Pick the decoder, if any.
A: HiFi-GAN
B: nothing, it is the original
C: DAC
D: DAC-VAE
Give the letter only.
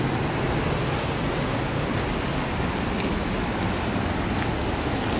B